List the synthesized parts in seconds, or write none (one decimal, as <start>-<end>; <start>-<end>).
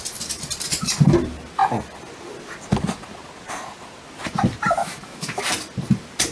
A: 4.8-5.4